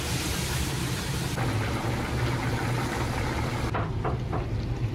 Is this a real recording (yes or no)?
yes